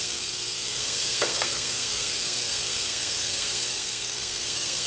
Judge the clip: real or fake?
fake